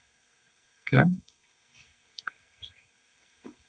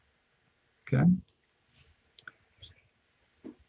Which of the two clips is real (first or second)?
second